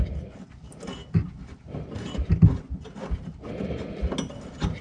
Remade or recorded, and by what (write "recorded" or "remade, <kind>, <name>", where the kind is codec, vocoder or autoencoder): recorded